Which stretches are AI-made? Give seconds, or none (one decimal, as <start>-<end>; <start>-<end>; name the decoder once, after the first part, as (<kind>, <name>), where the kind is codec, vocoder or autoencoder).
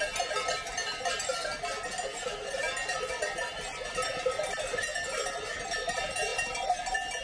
none